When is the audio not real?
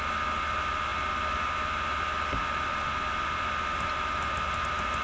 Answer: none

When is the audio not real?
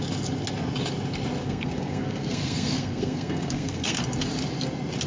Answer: 1.4-4.0 (codec, SNAC)